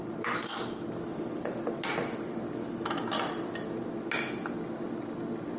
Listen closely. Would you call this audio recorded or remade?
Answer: recorded